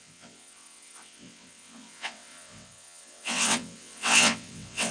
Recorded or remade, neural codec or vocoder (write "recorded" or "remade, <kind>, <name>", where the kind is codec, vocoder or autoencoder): remade, vocoder, WaveNeXt